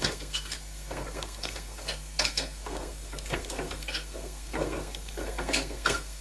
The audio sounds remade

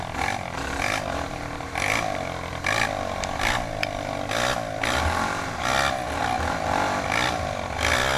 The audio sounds recorded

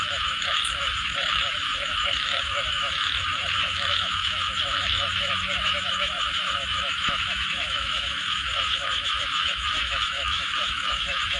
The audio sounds remade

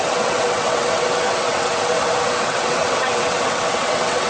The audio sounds remade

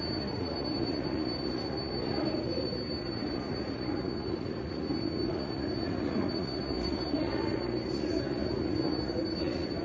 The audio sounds remade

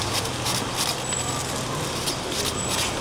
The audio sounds recorded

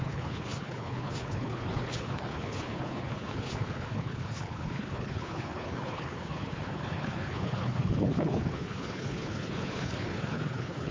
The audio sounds remade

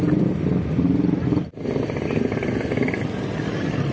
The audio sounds recorded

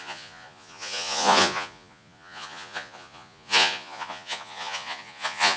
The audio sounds remade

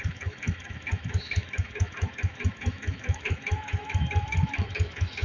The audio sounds remade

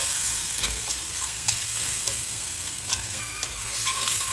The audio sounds remade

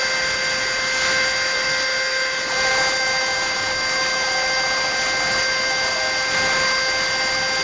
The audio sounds recorded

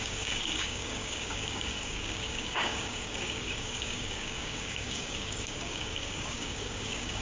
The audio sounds remade